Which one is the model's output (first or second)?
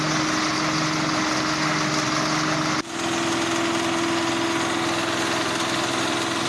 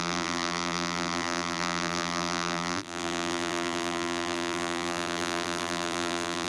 second